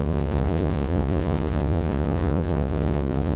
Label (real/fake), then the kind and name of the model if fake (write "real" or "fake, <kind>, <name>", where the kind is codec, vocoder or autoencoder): fake, vocoder, Vocos